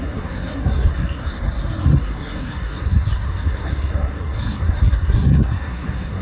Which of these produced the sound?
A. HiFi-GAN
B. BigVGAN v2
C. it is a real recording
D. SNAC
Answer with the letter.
D